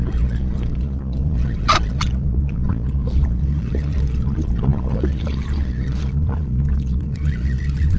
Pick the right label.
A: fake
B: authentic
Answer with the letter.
A